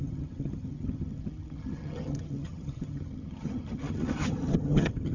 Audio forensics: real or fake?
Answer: fake